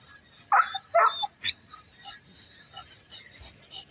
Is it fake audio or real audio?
real